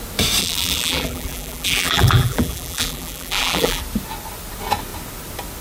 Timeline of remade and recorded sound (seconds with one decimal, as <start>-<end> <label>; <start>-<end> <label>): 0.0-0.4 recorded; 0.4-3.8 remade; 3.8-5.6 recorded